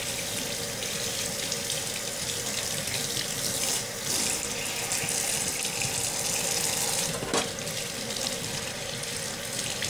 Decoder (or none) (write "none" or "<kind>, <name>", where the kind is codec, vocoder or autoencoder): none